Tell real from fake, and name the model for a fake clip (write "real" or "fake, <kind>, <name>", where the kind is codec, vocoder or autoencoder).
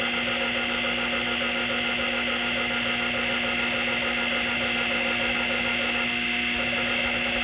real